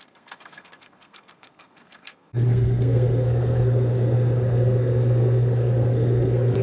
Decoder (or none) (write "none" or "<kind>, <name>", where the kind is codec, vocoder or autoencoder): codec, SNAC